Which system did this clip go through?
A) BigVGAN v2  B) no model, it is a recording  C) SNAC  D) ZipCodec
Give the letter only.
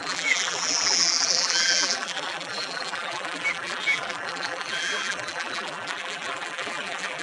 A